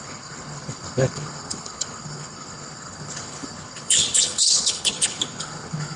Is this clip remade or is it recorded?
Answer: remade